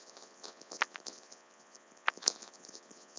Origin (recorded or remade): remade